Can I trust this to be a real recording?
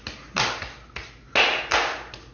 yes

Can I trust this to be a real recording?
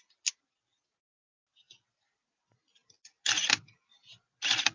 yes